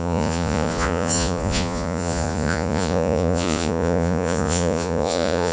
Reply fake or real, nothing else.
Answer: fake